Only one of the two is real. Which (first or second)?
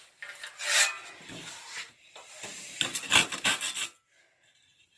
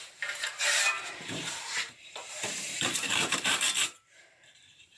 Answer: first